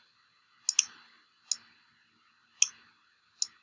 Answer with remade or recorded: recorded